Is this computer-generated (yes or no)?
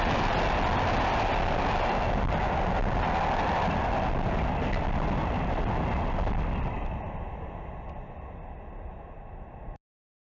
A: no